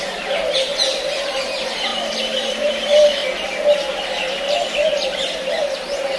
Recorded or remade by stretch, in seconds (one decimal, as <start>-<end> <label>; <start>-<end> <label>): 0.0-1.9 remade; 1.9-2.5 recorded; 2.5-3.2 remade; 3.2-5.6 recorded; 5.6-6.2 remade